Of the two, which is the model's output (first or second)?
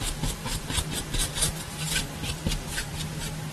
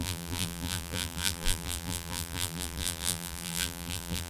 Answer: second